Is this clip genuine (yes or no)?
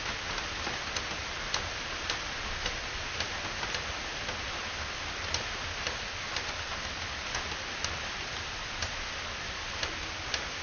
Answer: yes